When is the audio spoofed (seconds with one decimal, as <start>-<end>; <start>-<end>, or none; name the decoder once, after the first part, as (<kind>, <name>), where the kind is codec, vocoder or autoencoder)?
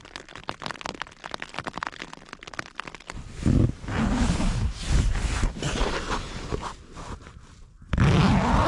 0.0-0.4 (vocoder, BigVGAN v2); 5.1-5.8; 7.0-8.7